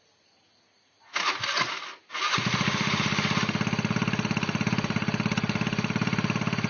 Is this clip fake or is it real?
real